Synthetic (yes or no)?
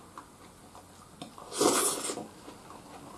no